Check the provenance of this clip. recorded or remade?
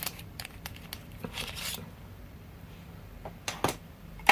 remade